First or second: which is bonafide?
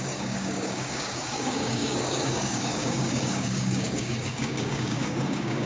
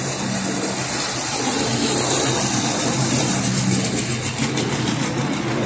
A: second